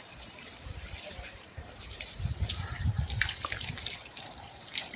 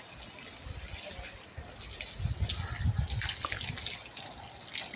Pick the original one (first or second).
second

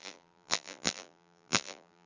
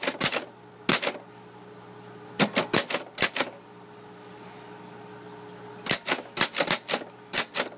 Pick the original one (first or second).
second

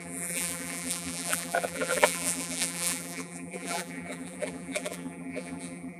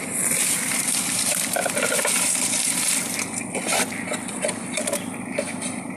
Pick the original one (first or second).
second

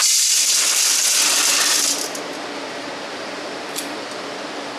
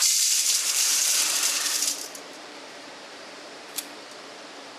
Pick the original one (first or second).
first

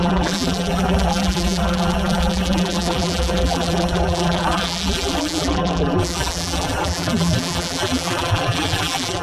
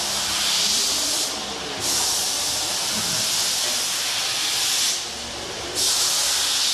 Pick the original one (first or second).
second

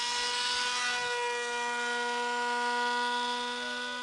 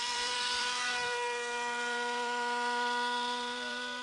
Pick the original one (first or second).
first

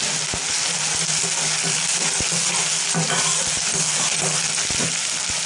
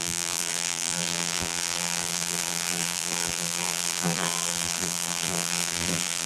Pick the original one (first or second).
first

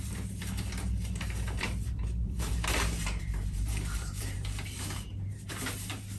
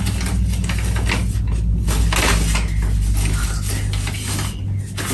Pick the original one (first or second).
second